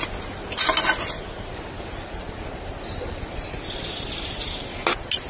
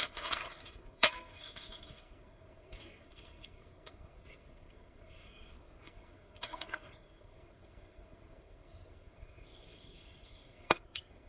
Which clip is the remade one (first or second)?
second